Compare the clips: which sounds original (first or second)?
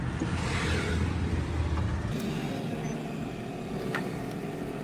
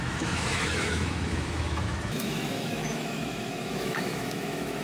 first